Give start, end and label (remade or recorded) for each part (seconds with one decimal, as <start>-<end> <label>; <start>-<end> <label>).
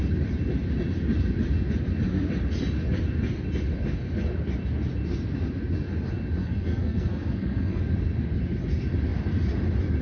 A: 0.0-6.4 recorded; 6.4-7.8 remade; 7.8-10.0 recorded